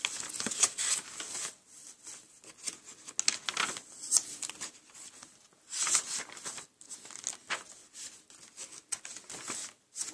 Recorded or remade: recorded